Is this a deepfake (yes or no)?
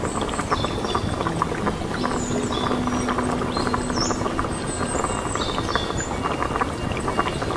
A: no